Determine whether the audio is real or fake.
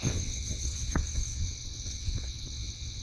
fake